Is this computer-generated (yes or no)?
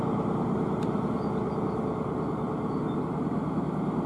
no